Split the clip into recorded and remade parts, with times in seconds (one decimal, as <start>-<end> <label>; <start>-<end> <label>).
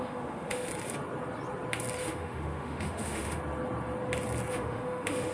0.0-0.7 remade; 0.7-2.0 recorded; 2.0-3.4 remade; 3.4-4.5 recorded; 4.5-5.3 remade